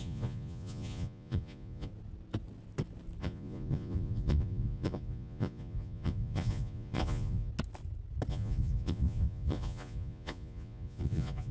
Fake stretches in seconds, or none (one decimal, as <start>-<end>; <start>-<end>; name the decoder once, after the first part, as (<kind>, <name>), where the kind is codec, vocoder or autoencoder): 0.0-1.9 (vocoder, Vocos); 3.2-7.5; 8.3-11.5